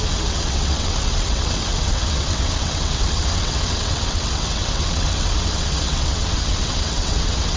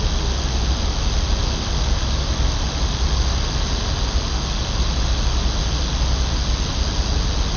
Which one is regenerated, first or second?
first